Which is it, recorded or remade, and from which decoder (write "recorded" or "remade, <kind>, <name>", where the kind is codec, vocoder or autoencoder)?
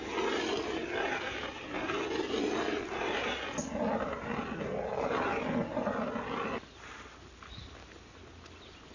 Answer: recorded